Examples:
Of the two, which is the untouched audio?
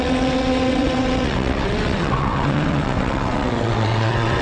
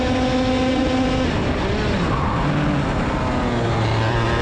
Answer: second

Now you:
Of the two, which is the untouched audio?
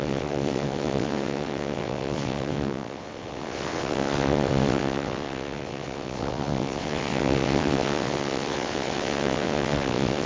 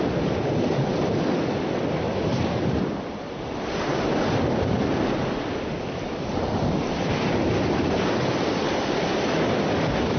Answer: second